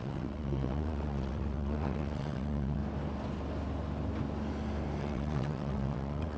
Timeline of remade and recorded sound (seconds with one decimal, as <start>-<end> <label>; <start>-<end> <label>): 0.0-2.8 remade; 2.8-5.0 recorded; 5.0-6.4 remade